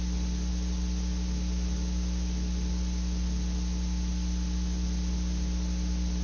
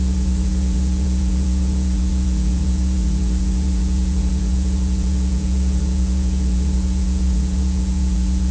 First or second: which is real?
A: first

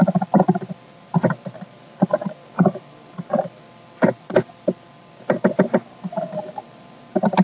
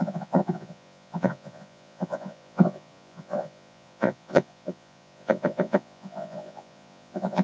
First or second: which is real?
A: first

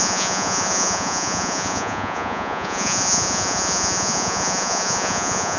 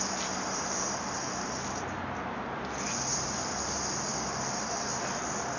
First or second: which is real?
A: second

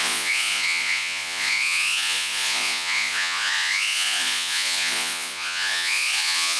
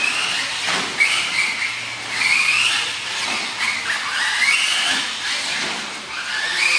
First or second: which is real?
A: second